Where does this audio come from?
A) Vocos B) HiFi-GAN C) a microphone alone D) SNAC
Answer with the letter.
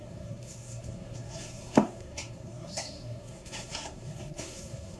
D